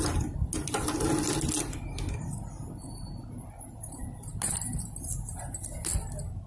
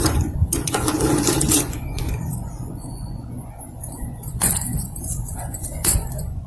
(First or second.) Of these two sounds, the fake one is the second